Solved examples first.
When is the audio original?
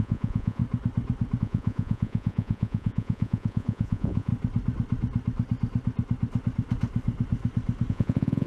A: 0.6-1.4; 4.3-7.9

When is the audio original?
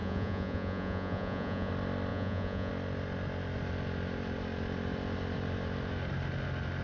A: 1.7-2.1; 2.7-6.8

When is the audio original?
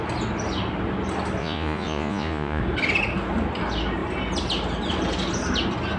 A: 0.0-1.4; 2.6-6.0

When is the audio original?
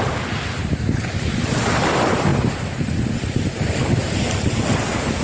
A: 0.0-5.2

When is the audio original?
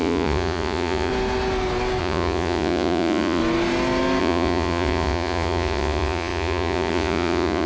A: 1.1-2.0; 3.4-4.2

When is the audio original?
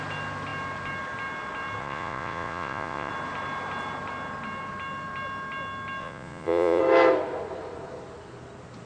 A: 0.0-1.8; 3.1-6.0; 6.8-8.9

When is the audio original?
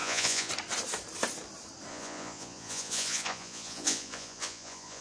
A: 0.5-1.9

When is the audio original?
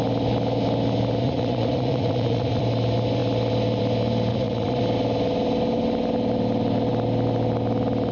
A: 0.0-1.2; 2.6-4.3; 4.8-8.1